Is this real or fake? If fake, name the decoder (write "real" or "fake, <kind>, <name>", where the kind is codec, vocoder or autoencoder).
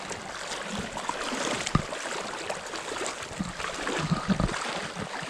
real